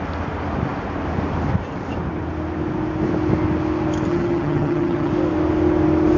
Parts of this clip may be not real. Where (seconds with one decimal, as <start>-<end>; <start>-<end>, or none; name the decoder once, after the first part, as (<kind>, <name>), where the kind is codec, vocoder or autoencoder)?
4.1-5.1 (vocoder, HiFi-GAN)